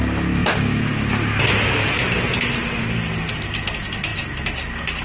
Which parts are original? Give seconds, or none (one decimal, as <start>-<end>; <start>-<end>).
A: 0.0-0.4; 1.1-1.8; 3.3-5.0